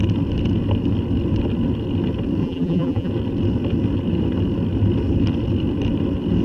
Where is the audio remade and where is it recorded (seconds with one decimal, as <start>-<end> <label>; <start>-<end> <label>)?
0.0-2.4 recorded; 2.4-3.1 remade; 3.1-6.4 recorded